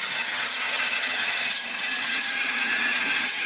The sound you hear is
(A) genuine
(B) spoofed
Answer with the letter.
B